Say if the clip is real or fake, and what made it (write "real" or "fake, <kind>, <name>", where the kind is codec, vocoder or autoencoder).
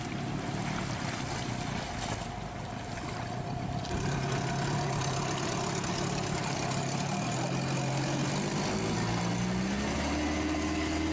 real